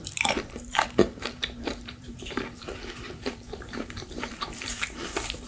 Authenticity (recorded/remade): remade